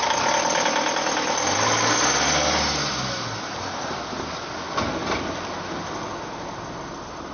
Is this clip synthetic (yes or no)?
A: no